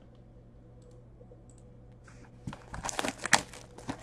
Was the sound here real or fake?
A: real